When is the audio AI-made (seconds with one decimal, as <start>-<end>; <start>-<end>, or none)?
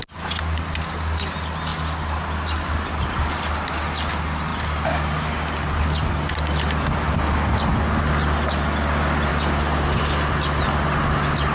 none